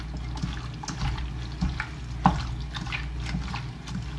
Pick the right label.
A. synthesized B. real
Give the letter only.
B